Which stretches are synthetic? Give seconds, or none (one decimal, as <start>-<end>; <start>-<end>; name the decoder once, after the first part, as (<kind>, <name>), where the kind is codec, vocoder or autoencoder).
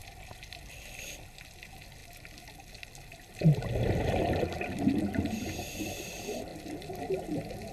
0.0-2.0 (vocoder, BigVGAN v2); 5.8-7.7